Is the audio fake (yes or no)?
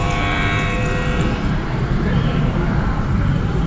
yes